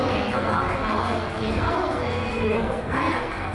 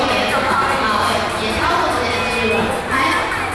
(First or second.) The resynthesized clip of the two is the first